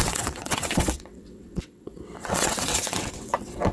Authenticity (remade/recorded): remade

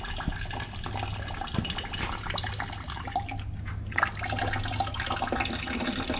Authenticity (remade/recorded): recorded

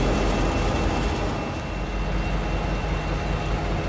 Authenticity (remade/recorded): recorded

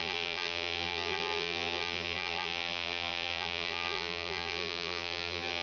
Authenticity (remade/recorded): remade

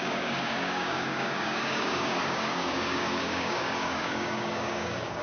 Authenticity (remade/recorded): remade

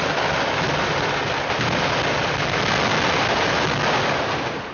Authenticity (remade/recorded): recorded